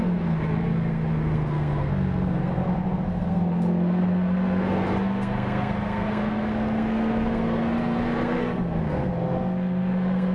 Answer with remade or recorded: remade